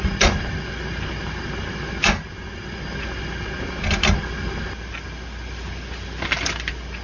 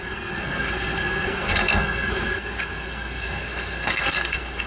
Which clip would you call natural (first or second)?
first